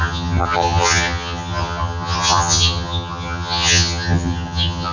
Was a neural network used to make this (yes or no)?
yes